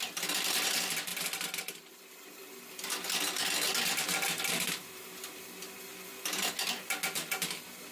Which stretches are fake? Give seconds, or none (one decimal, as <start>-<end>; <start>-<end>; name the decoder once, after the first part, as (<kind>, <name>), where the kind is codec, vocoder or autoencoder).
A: none